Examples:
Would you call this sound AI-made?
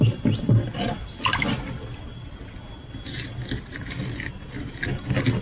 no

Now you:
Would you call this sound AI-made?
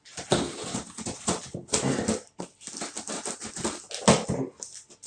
no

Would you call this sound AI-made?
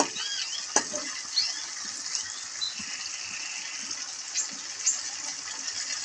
no